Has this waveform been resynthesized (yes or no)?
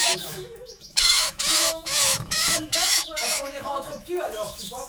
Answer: yes